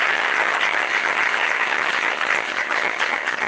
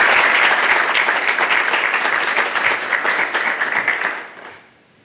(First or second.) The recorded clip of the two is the second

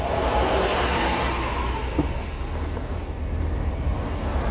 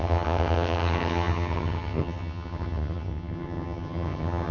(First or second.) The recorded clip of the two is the first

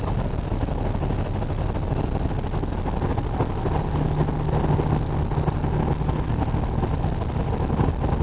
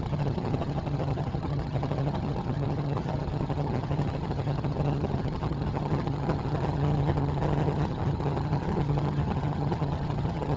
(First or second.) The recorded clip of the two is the first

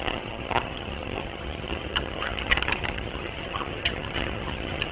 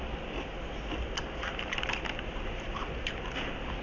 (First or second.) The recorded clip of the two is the second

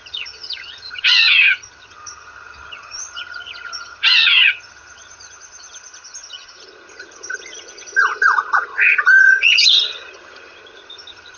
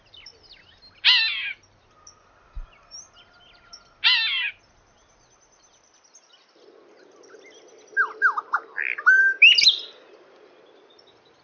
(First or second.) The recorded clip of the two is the second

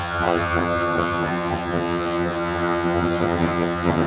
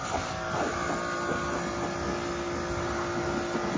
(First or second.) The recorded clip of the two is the second